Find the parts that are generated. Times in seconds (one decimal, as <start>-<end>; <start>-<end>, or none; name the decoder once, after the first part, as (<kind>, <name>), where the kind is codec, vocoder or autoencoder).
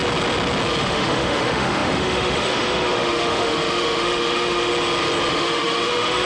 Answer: 0.8-4.7 (autoencoder, DAC-VAE); 5.3-6.3